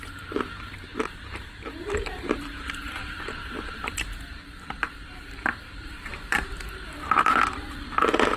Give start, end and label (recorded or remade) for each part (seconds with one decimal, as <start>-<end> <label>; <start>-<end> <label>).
0.0-8.4 remade